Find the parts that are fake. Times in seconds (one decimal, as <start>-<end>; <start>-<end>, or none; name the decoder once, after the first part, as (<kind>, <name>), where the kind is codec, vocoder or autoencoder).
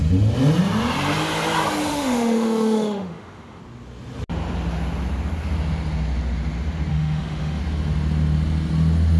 1.9-3.6 (autoencoder, DAC-VAE); 6.9-7.6